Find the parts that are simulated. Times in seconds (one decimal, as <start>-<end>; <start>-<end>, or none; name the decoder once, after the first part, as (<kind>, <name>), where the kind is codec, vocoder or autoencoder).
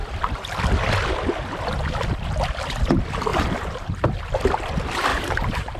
3.3-4.2 (vocoder, BigVGAN v2); 5.1-5.8